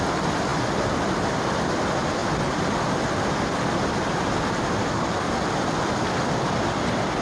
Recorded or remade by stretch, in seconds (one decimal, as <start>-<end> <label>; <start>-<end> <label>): 0.0-4.8 recorded; 4.8-5.3 remade; 5.3-7.2 recorded